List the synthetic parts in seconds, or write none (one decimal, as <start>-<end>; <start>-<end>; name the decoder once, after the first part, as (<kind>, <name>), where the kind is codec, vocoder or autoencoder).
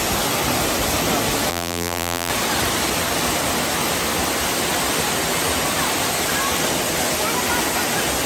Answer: 1.5-2.3 (vocoder, BigVGAN v2)